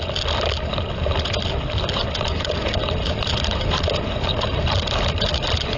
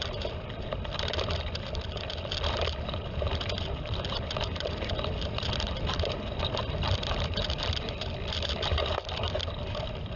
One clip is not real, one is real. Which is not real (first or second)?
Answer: second